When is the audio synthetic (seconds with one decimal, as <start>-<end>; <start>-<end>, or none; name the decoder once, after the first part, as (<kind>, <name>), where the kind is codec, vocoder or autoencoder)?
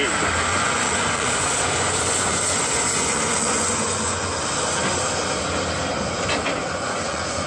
0.5-4.3 (vocoder, Vocos); 6.6-7.5